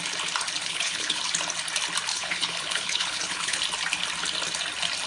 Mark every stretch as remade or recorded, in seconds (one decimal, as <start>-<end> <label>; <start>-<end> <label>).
0.0-0.6 recorded; 0.6-1.2 remade; 1.2-2.1 recorded; 2.1-3.6 remade; 3.6-5.1 recorded